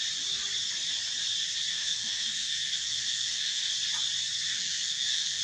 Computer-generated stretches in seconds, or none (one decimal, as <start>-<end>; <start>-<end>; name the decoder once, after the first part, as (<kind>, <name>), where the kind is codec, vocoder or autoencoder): 1.7-3.7 (codec, SNAC); 4.5-5.4